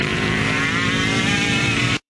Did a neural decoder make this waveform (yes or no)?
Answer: yes